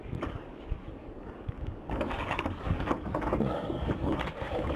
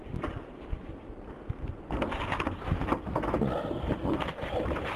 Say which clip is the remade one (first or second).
first